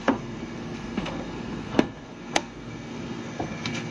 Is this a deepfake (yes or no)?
yes